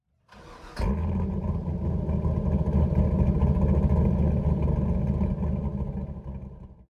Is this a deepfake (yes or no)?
no